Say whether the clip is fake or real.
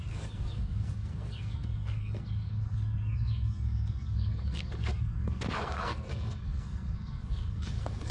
fake